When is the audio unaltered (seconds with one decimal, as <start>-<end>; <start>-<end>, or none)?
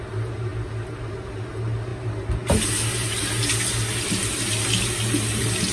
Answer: 0.0-5.7